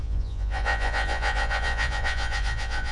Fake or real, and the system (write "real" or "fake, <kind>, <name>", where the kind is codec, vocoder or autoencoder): fake, vocoder, Vocos